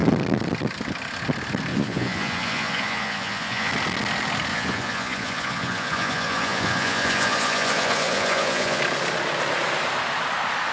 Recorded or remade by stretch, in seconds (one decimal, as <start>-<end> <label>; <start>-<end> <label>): 0.0-1.7 recorded; 1.7-3.7 remade; 3.7-4.5 recorded; 4.5-8.8 remade; 8.8-10.7 recorded